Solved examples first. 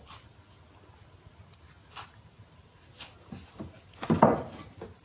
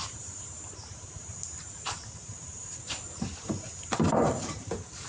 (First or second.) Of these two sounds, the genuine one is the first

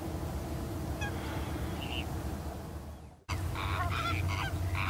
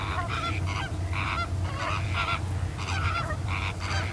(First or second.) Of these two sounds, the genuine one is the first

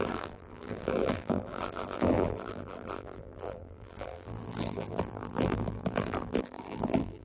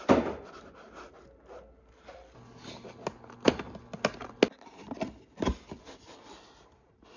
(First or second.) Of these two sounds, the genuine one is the second